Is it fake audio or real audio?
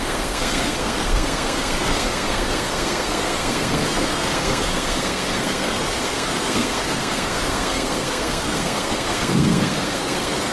fake